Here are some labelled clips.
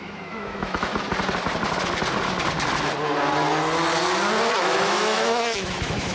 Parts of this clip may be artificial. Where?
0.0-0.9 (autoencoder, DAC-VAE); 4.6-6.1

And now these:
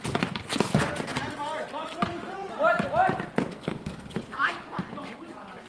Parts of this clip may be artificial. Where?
3.5-4.2 (codec, SNAC)

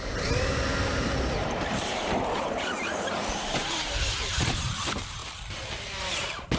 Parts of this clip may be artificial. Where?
0.0-5.2 (vocoder, BigVGAN v2); 6.0-6.6

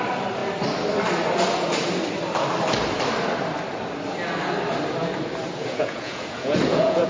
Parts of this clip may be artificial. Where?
5.6-7.1 (vocoder, Vocos)

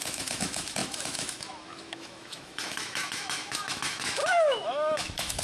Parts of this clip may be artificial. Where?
0.0-5.4 (autoencoder, DAC-VAE)

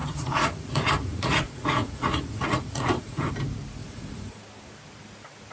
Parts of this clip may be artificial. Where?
0.0-3.3 (vocoder, Vocos); 3.8-4.4

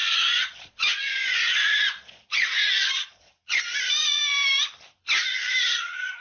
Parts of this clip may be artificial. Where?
0.0-4.2 (vocoder, Vocos); 5.7-6.2

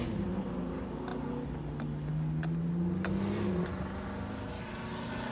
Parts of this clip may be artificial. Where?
none